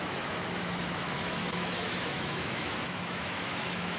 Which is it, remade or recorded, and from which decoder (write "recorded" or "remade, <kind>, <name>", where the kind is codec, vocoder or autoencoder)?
remade, autoencoder, DAC-VAE